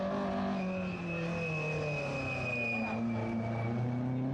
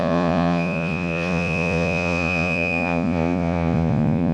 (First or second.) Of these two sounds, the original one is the first